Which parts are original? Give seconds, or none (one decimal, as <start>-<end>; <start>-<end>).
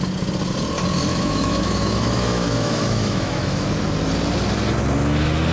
0.0-1.1; 3.7-5.5